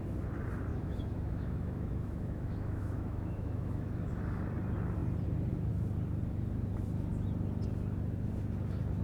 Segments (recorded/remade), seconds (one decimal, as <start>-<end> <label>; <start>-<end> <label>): 0.0-0.7 recorded; 0.7-4.1 remade; 4.1-9.0 recorded